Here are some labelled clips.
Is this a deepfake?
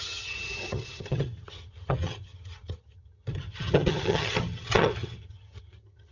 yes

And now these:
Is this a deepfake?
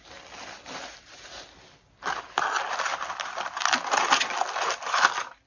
no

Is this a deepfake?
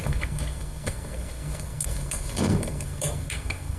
yes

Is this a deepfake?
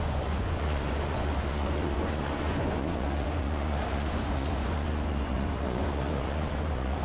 yes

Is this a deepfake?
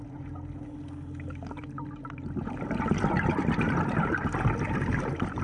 no